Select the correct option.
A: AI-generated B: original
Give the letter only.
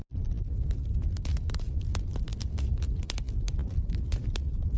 B